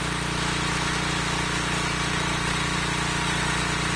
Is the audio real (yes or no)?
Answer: yes